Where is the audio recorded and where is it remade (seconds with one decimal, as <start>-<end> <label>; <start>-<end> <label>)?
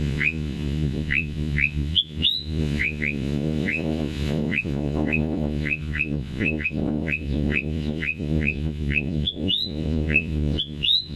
0.0-11.2 remade